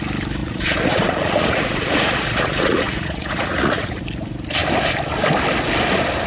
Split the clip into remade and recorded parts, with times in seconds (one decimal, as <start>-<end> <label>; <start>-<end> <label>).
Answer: 0.0-0.4 recorded; 0.4-4.0 remade; 4.0-6.3 recorded